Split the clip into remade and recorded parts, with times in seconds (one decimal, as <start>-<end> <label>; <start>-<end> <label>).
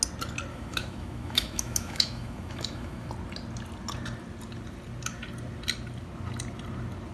0.0-0.5 recorded; 0.5-3.1 remade; 3.1-7.1 recorded